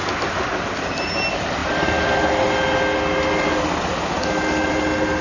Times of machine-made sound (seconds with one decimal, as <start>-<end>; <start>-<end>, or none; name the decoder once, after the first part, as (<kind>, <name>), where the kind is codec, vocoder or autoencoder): none